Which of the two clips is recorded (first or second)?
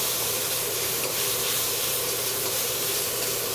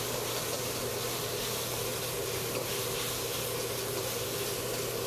second